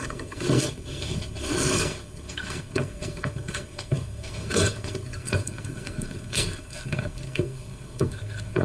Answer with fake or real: fake